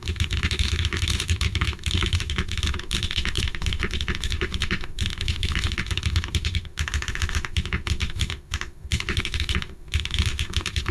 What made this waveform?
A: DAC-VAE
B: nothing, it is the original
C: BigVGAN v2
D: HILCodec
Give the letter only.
A